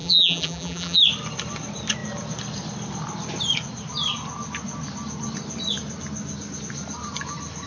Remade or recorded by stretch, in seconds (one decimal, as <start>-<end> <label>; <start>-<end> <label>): 0.0-1.0 remade; 1.0-7.7 recorded